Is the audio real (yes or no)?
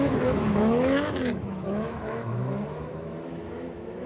no